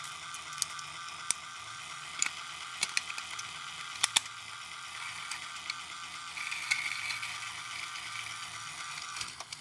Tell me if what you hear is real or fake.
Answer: real